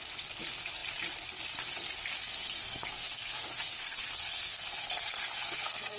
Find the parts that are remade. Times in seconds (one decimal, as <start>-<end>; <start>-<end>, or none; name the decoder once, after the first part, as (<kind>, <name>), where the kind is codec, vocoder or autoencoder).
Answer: 2.2-6.0 (codec, SNAC)